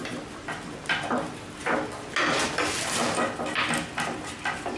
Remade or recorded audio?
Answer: recorded